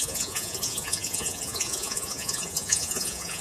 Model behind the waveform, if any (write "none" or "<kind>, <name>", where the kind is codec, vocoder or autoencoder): vocoder, Vocos